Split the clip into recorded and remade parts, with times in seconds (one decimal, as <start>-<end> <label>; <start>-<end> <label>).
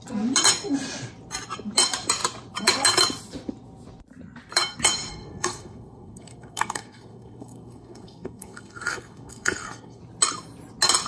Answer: 0.0-5.1 recorded; 5.1-10.0 remade; 10.0-11.1 recorded